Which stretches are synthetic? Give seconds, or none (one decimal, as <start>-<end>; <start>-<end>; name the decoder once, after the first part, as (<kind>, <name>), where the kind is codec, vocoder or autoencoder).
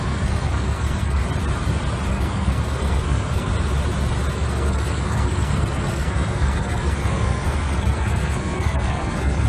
0.0-1.2 (codec, SNAC); 2.1-3.5; 4.3-9.5